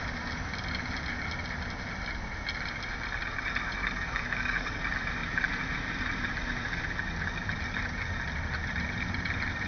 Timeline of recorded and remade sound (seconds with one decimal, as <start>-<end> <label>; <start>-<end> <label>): 0.0-3.8 recorded; 3.8-4.8 remade; 4.8-9.7 recorded